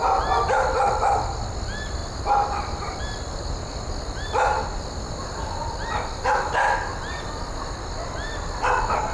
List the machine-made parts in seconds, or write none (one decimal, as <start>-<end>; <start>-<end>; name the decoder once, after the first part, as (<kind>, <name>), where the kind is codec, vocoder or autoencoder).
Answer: none